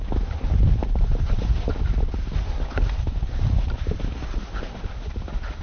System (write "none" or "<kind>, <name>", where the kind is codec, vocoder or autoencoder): none